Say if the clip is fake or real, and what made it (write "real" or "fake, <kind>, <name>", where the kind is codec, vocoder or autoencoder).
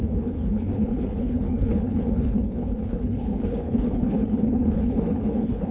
fake, codec, HILCodec